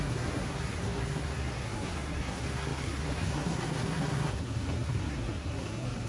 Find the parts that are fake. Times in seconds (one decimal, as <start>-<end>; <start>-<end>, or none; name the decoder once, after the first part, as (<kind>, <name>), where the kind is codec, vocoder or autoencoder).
0.0-6.1 (codec, SNAC)